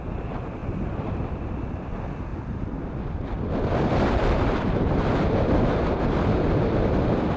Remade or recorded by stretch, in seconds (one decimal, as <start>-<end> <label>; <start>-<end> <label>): 0.0-0.6 recorded; 0.6-1.4 remade; 1.4-2.3 recorded; 2.3-4.6 remade; 4.6-7.4 recorded

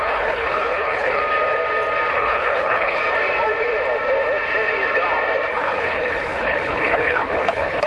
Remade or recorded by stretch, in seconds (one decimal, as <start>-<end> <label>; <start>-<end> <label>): 0.0-1.2 remade; 1.2-2.1 recorded; 2.1-3.0 remade; 3.0-5.5 recorded; 5.5-7.9 remade

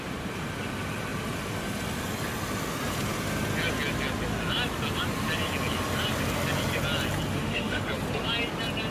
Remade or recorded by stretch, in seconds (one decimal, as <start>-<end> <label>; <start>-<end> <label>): 0.0-7.3 recorded; 7.3-7.8 remade; 7.8-8.9 recorded

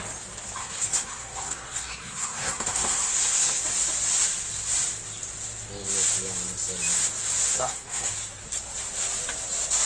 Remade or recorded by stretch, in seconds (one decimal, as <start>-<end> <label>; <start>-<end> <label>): 0.0-0.6 recorded; 0.6-3.6 remade; 3.6-7.5 recorded; 7.5-8.1 remade; 8.1-9.9 recorded